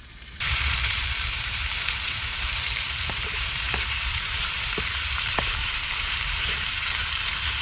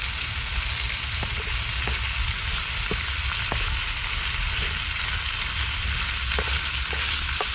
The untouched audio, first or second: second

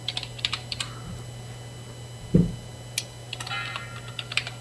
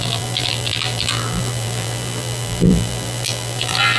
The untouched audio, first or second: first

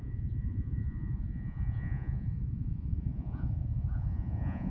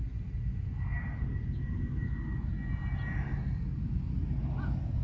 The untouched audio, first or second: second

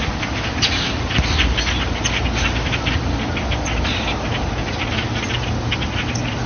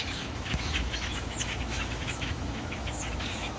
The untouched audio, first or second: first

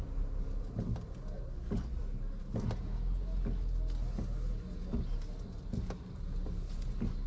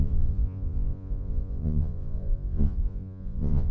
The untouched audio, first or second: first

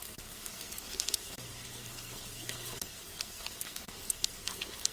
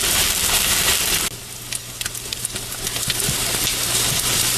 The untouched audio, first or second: second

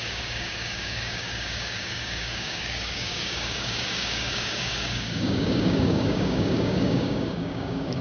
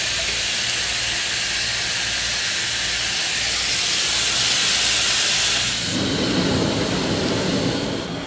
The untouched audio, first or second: second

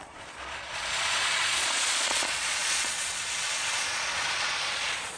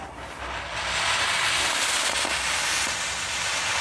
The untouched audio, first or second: second